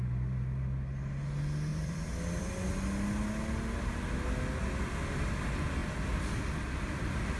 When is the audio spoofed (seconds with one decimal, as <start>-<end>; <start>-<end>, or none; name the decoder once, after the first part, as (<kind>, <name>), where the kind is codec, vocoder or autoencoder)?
1.7-2.4 (vocoder, BigVGAN v2); 5.8-6.4